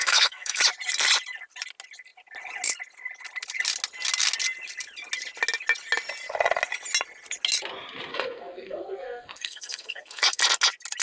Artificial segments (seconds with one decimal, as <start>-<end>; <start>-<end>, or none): 0.0-0.6; 8.1-10.4